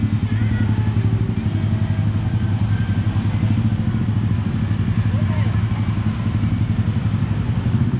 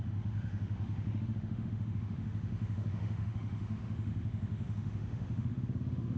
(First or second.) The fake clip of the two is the second